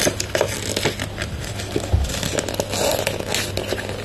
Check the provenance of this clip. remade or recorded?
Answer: recorded